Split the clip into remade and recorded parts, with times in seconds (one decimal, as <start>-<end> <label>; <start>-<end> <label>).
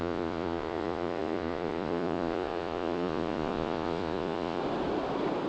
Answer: 0.0-4.6 remade; 4.6-5.5 recorded